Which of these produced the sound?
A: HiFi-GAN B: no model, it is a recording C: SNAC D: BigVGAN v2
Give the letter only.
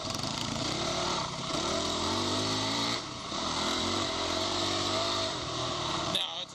D